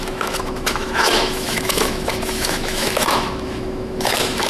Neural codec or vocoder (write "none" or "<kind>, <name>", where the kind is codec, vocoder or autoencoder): autoencoder, DAC-VAE